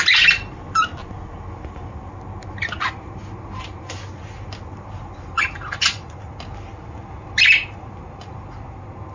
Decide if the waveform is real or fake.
real